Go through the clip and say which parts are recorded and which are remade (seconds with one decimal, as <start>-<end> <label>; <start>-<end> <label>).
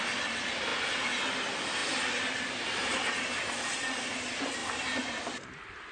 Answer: 0.0-4.6 recorded; 4.6-5.9 remade